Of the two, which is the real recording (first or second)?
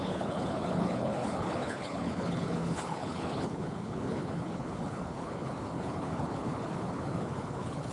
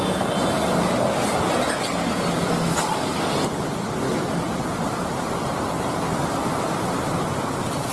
second